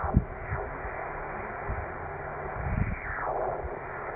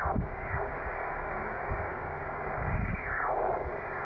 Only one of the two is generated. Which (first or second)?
second